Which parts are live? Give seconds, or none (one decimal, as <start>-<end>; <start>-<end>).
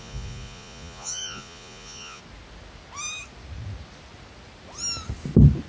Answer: 2.2-5.7